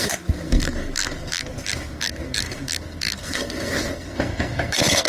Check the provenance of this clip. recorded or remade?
remade